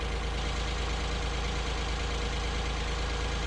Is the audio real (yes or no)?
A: yes